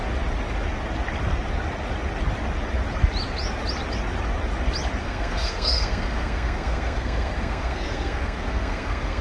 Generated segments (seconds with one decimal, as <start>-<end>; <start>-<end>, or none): 5.0-9.2

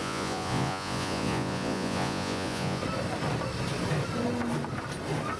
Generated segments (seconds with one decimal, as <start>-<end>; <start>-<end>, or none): 0.0-2.8

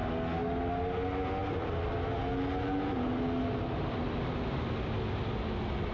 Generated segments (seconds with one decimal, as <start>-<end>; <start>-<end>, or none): none

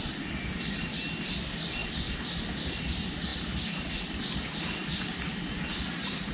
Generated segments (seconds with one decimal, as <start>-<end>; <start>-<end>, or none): none

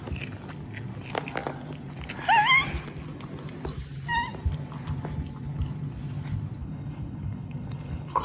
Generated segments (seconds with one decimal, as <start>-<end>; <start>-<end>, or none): 6.6-8.2

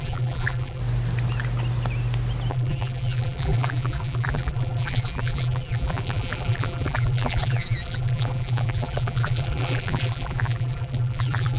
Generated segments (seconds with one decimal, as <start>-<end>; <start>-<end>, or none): 0.0-0.8; 2.5-11.6